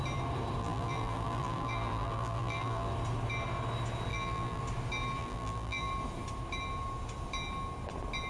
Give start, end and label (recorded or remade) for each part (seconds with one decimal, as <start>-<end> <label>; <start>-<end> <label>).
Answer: 0.0-0.6 recorded; 0.6-2.9 remade; 2.9-4.1 recorded; 4.1-4.6 remade; 4.6-5.2 recorded; 5.2-5.9 remade; 5.9-8.3 recorded